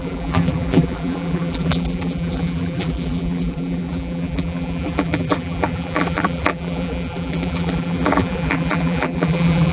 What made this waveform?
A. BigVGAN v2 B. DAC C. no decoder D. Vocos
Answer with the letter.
A